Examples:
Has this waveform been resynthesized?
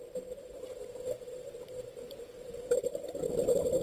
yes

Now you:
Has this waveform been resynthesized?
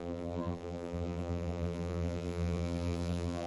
yes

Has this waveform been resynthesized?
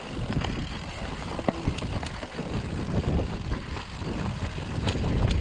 no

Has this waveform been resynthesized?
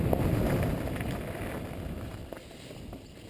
no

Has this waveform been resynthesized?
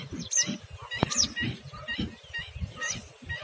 yes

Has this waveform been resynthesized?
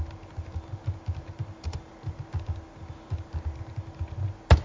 no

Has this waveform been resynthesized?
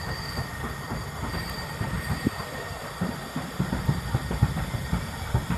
no